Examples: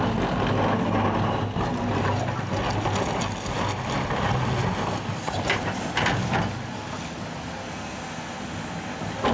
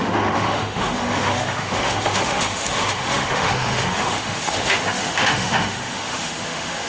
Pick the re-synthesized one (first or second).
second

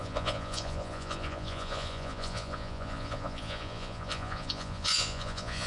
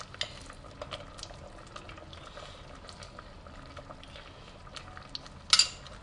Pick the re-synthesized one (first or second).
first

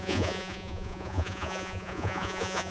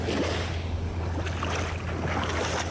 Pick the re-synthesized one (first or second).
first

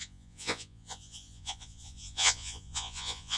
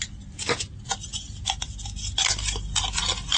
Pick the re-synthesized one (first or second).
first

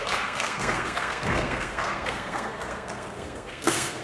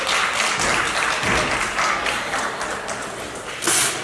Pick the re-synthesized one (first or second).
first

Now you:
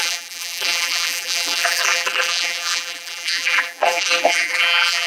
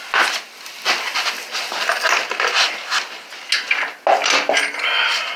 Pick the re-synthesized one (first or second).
first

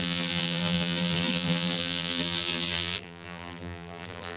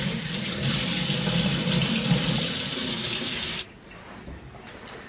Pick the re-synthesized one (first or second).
first